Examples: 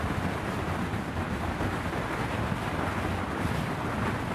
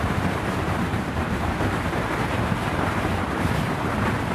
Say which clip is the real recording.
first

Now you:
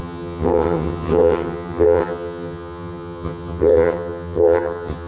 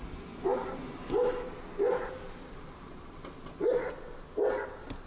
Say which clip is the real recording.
second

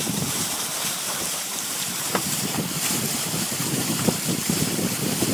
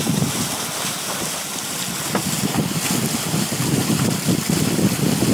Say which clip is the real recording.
second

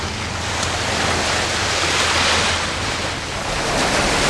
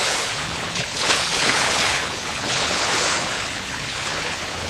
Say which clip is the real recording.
first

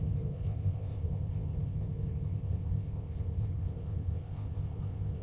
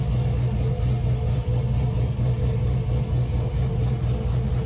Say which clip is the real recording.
second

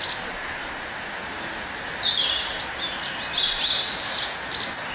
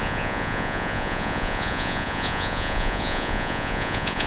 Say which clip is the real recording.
first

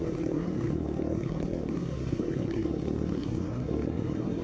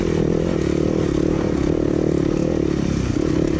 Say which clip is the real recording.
second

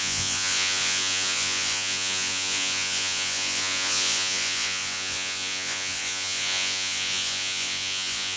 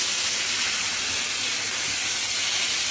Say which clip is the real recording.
second